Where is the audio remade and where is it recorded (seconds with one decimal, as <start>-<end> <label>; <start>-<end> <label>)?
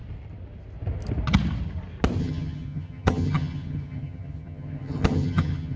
0.0-2.2 recorded; 2.2-5.8 remade